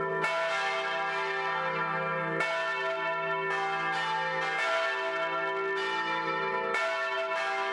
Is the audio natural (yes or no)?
yes